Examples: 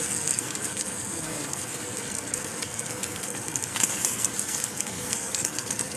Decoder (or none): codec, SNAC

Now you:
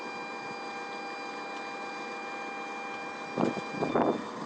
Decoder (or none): none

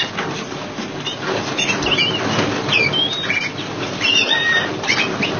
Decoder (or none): none